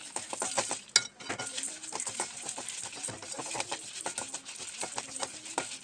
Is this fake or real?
real